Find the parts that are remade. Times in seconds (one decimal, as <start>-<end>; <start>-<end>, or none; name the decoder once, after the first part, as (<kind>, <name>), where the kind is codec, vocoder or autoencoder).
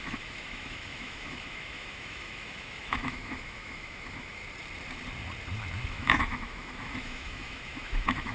0.0-4.4 (autoencoder, DAC-VAE); 5.9-8.3